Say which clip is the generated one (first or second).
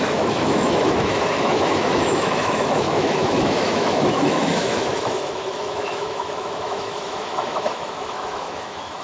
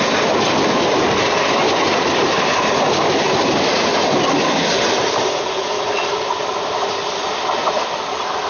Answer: first